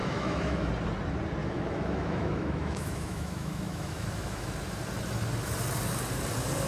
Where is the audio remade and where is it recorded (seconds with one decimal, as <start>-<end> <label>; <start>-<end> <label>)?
0.0-0.7 remade; 0.7-1.4 recorded; 1.4-4.5 remade; 4.5-6.7 recorded